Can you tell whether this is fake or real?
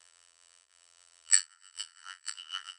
fake